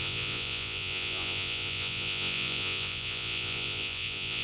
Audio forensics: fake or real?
fake